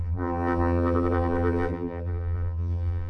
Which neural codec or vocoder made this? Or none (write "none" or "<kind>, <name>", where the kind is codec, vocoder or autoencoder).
vocoder, BigVGAN v2